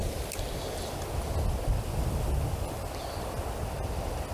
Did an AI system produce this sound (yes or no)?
no